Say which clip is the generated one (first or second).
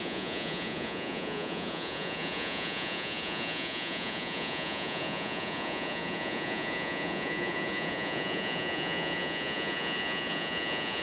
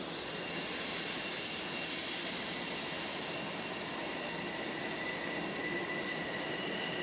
first